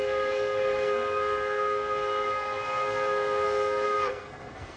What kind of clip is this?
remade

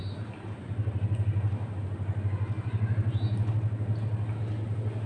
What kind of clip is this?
recorded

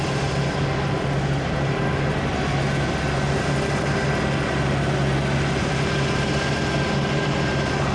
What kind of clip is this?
recorded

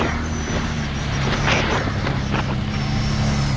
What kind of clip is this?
recorded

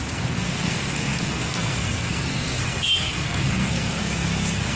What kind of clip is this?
remade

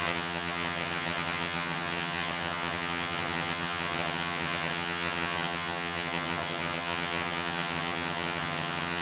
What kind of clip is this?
remade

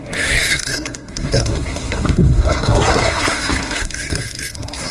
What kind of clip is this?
remade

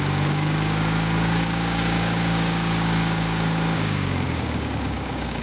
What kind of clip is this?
remade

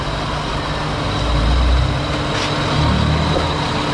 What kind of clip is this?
recorded